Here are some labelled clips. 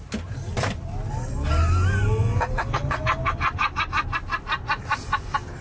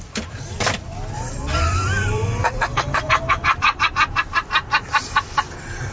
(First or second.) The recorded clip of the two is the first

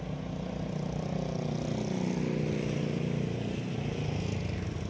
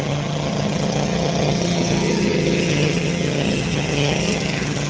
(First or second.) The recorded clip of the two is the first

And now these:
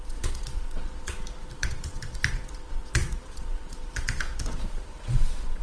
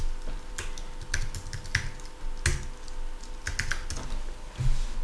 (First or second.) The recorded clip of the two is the second